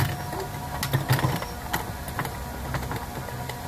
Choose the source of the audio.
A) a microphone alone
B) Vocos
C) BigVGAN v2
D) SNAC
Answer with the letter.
A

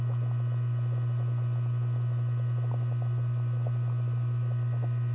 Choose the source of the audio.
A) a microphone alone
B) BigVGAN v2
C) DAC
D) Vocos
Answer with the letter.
A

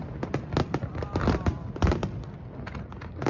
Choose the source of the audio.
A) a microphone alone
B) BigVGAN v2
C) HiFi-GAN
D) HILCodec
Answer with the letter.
A